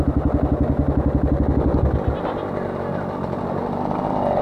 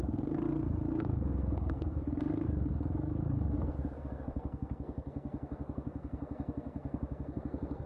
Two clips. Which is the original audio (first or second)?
first